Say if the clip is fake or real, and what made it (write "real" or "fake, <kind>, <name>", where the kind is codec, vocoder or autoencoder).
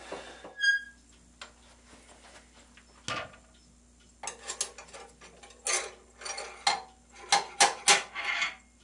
real